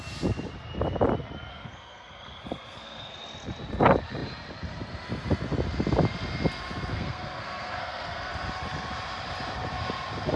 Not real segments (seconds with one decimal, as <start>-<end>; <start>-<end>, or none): 1.5-3.1; 6.9-8.3

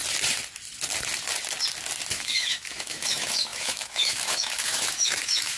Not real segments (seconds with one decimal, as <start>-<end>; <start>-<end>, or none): 2.1-5.6

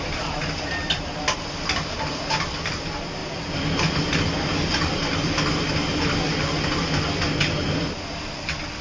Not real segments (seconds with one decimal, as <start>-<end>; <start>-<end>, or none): none